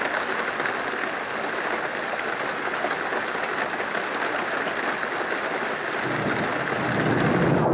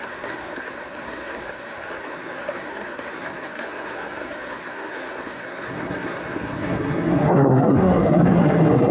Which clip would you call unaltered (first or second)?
first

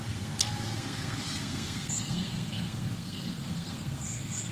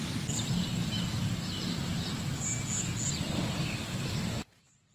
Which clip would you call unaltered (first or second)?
second